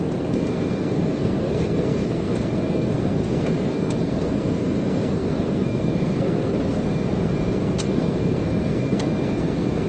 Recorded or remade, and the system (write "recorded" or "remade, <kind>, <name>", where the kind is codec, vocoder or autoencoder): remade, codec, SNAC